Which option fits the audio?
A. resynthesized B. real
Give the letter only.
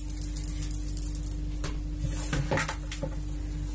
B